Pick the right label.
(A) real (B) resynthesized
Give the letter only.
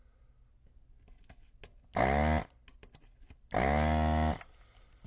A